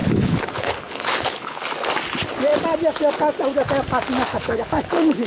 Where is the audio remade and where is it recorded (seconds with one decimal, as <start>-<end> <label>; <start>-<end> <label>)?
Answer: 0.0-1.6 remade; 1.6-4.3 recorded; 4.3-5.3 remade

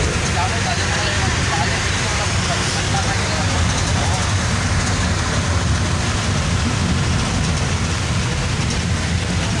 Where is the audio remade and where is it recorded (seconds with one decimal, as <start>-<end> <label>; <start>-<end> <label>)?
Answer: 0.0-9.6 recorded

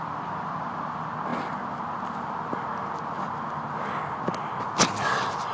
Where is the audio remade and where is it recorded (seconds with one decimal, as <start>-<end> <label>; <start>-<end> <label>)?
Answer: 0.0-5.5 recorded